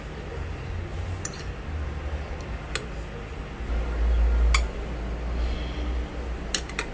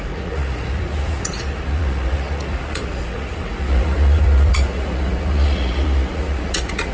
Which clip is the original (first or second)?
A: first